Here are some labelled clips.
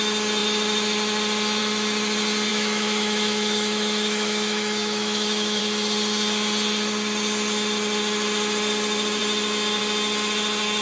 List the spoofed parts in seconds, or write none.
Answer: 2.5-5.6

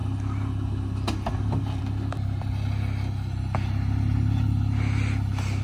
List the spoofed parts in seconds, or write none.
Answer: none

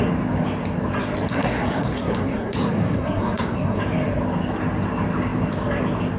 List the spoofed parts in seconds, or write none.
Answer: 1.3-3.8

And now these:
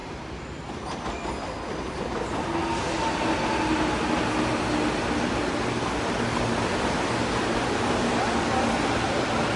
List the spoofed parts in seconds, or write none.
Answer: none

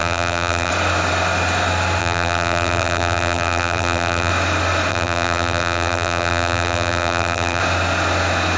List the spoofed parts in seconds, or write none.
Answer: 0.0-0.7; 2.0-4.3; 4.9-7.6

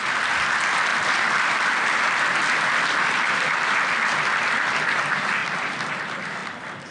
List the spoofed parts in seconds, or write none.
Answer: 0.9-5.0; 5.4-5.9